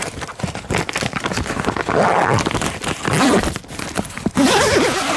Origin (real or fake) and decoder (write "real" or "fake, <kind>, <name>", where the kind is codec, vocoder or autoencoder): real